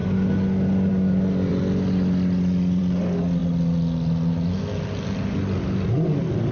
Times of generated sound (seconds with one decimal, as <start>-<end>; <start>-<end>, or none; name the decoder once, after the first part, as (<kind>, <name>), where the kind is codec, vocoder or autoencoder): none